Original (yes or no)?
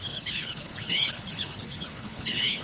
no